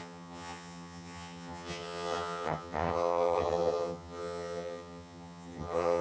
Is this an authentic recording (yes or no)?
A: no